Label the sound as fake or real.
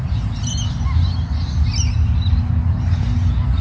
real